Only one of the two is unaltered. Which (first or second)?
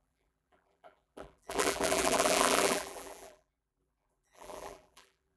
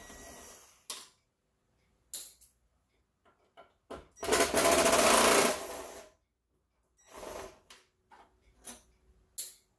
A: second